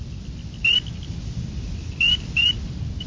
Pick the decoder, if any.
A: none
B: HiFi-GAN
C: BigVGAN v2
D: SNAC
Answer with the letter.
A